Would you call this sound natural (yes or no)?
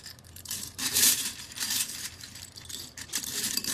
no